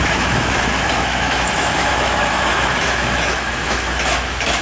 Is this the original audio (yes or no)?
no